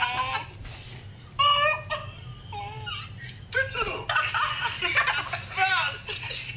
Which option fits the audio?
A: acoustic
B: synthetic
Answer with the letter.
A